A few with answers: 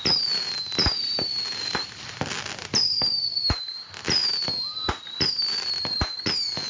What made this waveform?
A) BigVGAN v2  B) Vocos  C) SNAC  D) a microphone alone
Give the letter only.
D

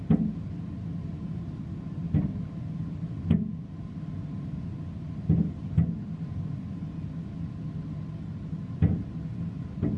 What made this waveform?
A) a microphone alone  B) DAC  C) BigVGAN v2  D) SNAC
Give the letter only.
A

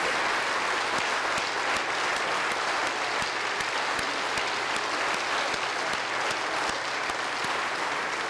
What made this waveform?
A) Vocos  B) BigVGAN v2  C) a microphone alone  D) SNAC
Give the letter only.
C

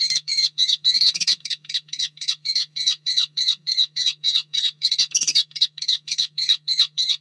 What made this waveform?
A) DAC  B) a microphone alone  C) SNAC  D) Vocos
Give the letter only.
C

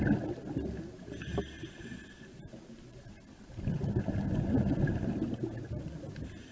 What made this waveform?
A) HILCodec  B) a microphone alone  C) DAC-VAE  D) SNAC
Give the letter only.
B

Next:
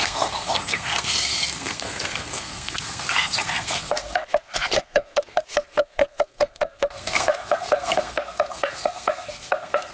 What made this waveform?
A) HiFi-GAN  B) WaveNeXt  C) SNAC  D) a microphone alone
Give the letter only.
C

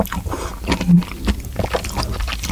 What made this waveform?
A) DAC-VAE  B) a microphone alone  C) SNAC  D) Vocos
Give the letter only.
B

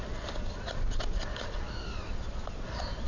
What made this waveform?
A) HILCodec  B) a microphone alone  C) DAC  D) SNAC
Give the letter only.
B